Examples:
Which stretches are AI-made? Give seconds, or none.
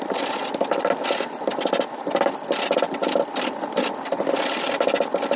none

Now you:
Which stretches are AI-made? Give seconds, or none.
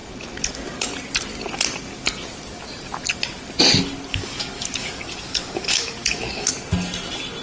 4.1-6.5 (codec, DAC)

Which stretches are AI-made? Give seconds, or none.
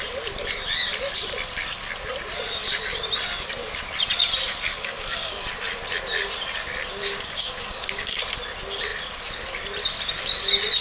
4.7-5.5 (codec, DAC); 7.0-8.2